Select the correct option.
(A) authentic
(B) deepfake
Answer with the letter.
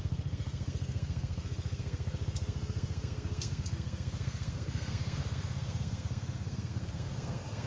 B